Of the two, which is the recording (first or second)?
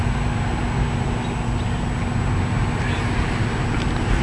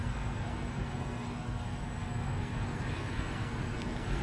first